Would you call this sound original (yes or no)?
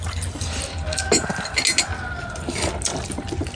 yes